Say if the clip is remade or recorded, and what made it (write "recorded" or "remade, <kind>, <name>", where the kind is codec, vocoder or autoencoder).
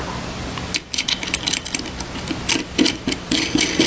recorded